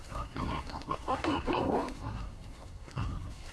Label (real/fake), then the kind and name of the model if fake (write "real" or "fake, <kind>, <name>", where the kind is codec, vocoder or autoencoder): fake, codec, SNAC